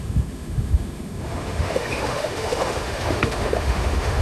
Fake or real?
fake